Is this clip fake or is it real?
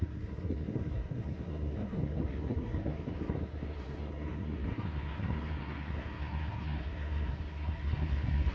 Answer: fake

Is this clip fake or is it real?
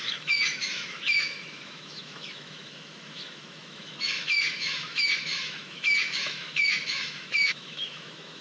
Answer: fake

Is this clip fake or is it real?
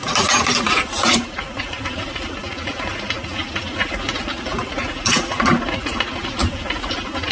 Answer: real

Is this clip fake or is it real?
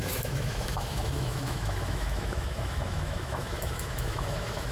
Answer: fake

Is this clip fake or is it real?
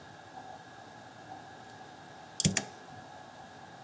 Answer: real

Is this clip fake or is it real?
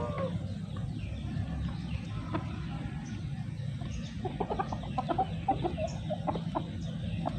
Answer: real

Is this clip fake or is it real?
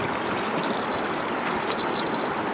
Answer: real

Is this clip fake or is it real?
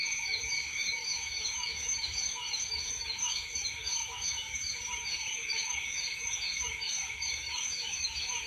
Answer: fake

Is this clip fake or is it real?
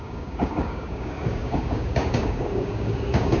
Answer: fake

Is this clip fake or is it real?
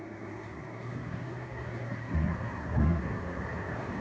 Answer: fake